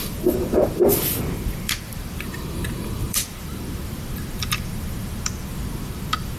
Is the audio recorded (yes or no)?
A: no